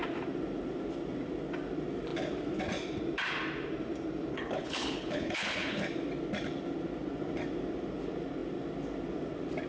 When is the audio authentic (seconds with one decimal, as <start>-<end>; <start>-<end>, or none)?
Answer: 0.0-4.3; 5.8-9.7